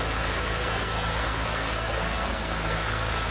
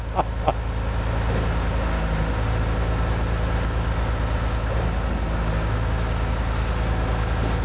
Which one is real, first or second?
second